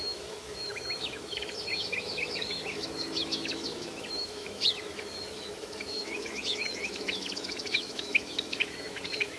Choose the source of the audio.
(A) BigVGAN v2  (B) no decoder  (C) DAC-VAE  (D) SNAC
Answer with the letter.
C